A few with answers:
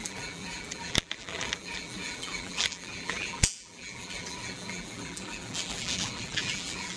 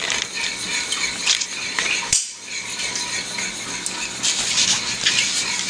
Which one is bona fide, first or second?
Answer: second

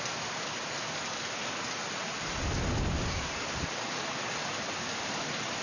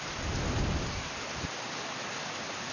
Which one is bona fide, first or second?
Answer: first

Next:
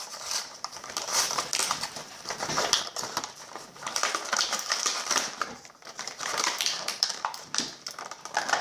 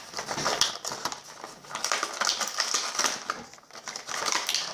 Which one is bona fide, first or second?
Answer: second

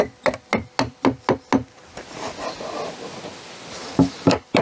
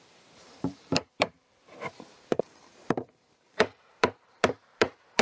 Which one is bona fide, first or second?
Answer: first